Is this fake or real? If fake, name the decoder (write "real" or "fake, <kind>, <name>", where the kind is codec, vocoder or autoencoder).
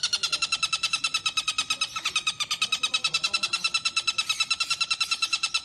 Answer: real